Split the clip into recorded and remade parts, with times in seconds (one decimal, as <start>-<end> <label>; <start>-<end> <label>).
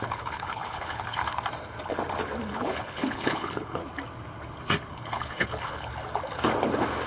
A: 0.0-1.2 remade; 1.2-2.5 recorded; 2.5-3.8 remade; 3.8-4.9 recorded; 4.9-5.9 remade; 5.9-7.1 recorded